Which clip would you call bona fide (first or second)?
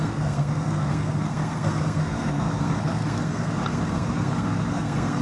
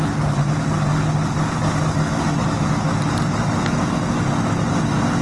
second